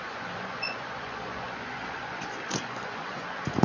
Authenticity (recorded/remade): remade